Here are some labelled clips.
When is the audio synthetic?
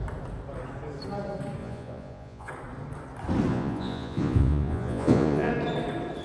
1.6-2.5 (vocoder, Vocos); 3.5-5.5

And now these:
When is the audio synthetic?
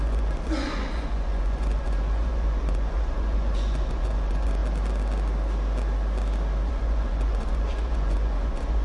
0.0-4.6 (vocoder, Vocos); 6.7-8.8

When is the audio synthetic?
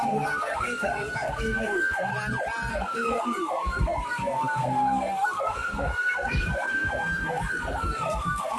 0.0-2.1 (codec, SNAC); 2.7-8.6